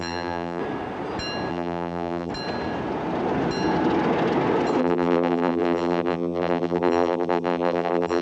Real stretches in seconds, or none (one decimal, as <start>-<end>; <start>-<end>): 0.6-1.5; 2.3-4.8